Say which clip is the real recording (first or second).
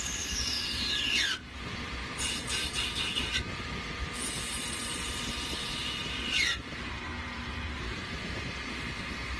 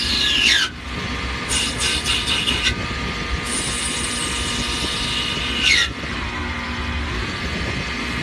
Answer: second